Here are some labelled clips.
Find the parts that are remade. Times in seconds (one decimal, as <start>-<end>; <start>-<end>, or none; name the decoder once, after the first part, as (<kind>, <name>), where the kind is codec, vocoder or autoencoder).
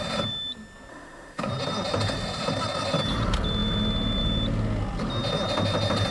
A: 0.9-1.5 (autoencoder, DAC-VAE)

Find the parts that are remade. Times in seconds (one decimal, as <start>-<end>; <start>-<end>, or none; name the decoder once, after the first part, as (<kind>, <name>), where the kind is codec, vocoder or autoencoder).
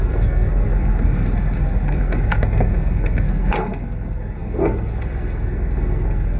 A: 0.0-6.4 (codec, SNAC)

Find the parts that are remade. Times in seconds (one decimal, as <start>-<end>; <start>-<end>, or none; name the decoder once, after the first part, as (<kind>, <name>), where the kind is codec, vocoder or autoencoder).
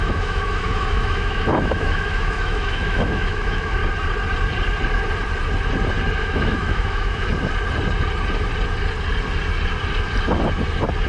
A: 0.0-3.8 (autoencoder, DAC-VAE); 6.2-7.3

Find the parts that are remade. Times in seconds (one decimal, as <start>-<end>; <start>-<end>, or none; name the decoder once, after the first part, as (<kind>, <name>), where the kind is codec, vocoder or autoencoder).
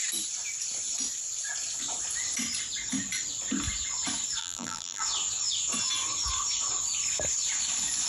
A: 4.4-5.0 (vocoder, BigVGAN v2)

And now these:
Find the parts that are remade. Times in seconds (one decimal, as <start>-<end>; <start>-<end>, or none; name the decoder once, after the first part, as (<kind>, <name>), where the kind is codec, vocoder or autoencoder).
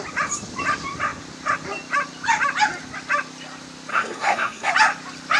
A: 3.9-4.7 (codec, SNAC)